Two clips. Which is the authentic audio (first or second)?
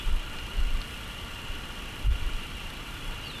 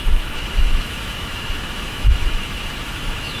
first